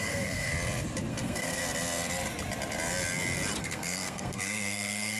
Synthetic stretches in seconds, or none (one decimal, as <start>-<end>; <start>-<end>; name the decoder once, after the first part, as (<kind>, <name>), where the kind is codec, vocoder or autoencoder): 0.0-0.5 (codec, SNAC); 1.1-1.6; 3.6-5.2